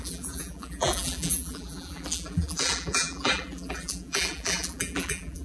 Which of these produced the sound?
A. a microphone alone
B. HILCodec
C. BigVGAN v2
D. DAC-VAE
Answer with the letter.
C